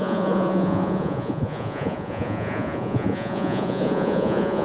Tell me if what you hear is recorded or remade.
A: remade